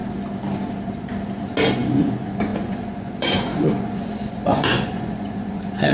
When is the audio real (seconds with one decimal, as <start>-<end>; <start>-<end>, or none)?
0.0-2.0